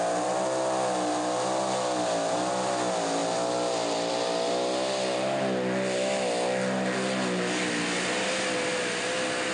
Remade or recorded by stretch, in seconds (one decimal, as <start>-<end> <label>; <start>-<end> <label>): 0.0-9.5 recorded